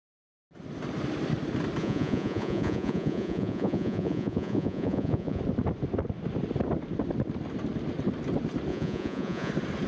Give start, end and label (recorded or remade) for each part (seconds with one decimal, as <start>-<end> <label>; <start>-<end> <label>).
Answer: 0.0-1.8 recorded; 1.8-5.4 remade; 5.4-8.7 recorded; 8.7-9.5 remade; 9.5-9.9 recorded